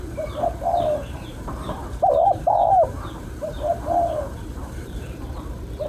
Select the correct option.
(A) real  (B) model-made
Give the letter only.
B